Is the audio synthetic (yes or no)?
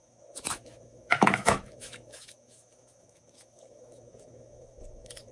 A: yes